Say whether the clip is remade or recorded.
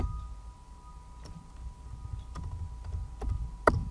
recorded